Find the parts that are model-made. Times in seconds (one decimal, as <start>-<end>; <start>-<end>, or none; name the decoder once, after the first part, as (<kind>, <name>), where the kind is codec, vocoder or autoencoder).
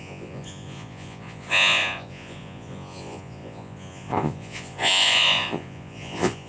0.0-6.5 (vocoder, Vocos)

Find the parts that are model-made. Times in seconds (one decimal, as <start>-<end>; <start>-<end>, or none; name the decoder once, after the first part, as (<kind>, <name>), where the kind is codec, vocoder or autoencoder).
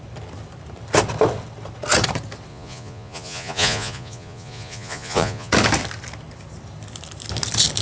2.5-5.5 (vocoder, Vocos)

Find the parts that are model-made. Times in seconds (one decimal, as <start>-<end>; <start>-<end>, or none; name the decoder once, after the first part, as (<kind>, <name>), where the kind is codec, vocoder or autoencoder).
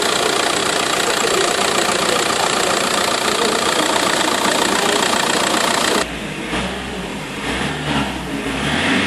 0.6-4.2 (vocoder, BigVGAN v2); 7.1-7.7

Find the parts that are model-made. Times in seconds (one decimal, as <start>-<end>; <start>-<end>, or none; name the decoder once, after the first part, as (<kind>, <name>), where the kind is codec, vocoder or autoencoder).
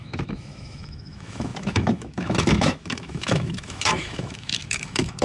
0.0-5.2 (autoencoder, DAC-VAE)